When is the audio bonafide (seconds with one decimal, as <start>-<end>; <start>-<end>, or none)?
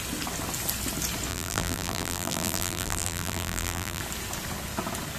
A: 0.0-1.3; 4.0-5.2